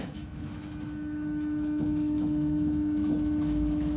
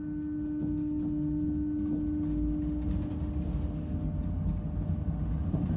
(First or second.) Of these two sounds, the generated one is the first